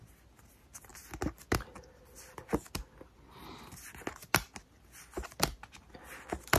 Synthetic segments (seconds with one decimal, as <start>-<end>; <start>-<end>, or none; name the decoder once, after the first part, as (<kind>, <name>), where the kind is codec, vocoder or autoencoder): none